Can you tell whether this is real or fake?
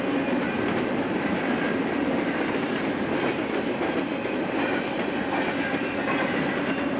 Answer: real